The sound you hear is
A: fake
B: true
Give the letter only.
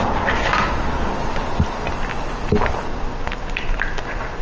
B